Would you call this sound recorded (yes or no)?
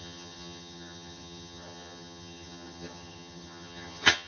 no